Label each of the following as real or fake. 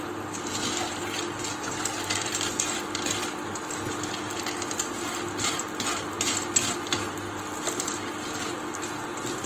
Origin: real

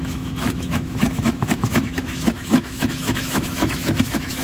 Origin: fake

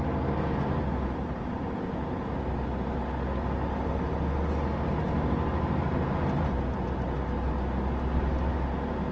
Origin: real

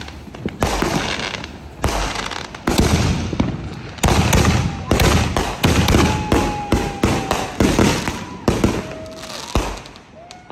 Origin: real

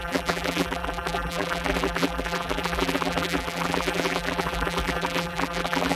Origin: fake